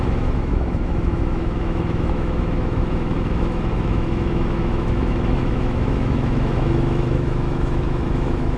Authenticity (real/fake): fake